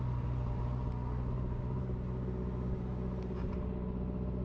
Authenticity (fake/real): real